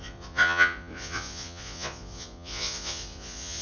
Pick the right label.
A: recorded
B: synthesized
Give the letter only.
B